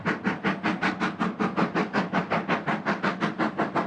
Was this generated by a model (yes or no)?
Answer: no